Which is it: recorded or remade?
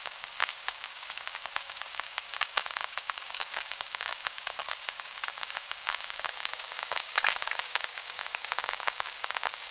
remade